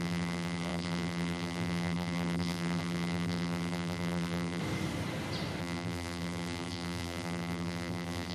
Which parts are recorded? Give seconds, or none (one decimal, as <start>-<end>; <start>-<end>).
4.6-5.6